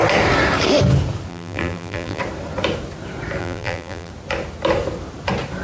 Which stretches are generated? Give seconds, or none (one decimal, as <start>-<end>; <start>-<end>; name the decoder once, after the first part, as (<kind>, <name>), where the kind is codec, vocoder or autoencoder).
1.3-2.2 (vocoder, BigVGAN v2); 3.4-4.1